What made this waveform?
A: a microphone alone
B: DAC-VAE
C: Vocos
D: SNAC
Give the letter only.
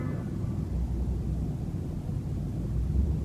A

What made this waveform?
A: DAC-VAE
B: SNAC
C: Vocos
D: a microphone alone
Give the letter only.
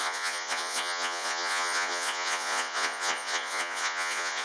C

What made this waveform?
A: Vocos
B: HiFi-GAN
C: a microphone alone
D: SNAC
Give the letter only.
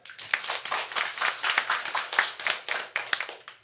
C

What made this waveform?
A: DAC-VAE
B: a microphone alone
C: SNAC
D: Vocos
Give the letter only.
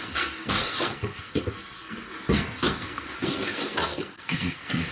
C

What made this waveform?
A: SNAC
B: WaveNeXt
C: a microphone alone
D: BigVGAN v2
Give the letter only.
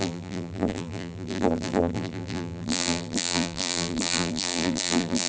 D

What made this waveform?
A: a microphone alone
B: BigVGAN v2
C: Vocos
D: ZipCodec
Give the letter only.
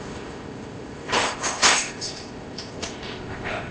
D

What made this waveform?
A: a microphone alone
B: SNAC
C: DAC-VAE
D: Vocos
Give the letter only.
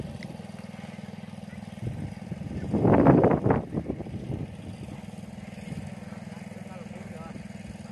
A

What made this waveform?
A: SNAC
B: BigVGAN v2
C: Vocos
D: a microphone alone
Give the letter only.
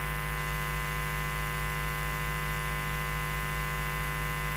D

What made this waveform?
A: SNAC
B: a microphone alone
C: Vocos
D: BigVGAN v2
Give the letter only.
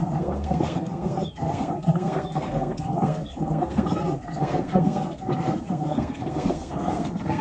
A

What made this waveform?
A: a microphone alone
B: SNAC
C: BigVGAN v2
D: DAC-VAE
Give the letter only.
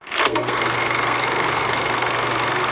B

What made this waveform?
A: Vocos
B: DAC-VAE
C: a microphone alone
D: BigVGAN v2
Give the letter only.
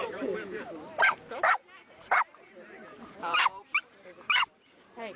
D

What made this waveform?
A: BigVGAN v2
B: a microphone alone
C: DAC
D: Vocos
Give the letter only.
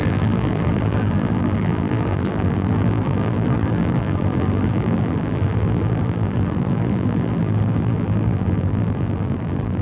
A